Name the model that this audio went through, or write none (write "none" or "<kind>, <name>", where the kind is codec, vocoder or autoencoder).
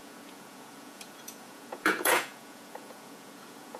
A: vocoder, Vocos